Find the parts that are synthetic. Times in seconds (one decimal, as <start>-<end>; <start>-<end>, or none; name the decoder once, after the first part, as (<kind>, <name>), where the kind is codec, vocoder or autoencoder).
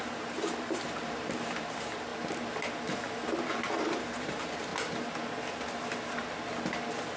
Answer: 0.0-2.1 (vocoder, BigVGAN v2); 4.0-4.7